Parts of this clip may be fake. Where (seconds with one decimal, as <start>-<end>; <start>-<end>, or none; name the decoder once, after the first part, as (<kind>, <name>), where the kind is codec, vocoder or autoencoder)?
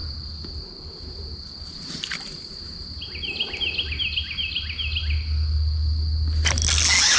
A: none